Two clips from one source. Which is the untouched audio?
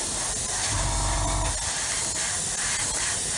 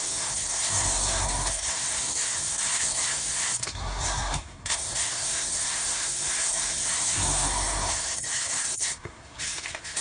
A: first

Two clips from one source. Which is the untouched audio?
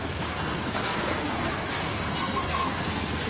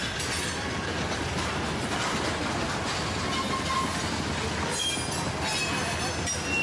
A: second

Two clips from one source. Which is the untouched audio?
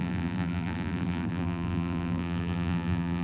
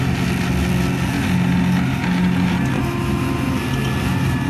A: second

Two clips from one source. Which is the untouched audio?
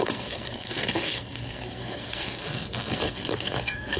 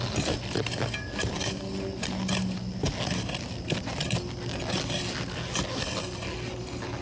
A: second